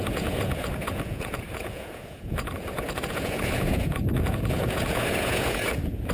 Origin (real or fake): fake